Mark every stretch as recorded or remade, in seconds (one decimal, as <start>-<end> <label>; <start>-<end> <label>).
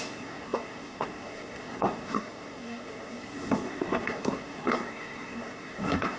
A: 0.0-6.2 remade